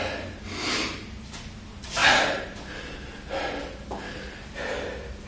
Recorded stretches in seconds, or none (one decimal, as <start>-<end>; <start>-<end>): 0.0-5.3